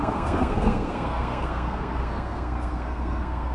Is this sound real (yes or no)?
no